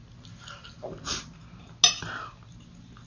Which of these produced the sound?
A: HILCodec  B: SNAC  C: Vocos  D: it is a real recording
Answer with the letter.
D